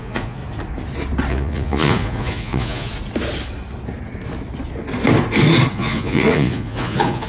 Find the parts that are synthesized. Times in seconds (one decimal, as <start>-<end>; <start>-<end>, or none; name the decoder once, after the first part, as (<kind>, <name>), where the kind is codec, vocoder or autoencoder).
0.0-0.4 (vocoder, Vocos); 1.3-2.9; 5.7-7.3